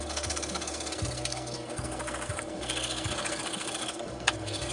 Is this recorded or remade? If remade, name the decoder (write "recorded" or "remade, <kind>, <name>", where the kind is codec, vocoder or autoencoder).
remade, codec, SNAC